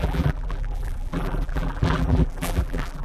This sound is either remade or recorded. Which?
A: remade